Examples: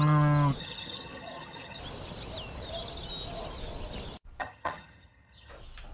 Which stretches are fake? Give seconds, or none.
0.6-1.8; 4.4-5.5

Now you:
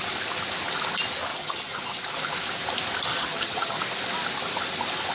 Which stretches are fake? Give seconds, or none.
1.3-1.8; 3.1-3.8